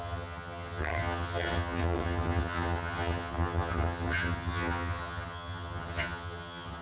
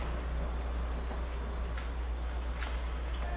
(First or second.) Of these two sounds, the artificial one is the first